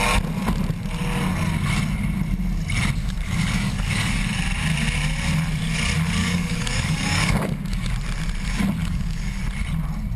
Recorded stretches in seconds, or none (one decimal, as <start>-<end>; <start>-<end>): 0.0-3.0; 4.2-6.2; 7.9-8.8; 9.4-10.2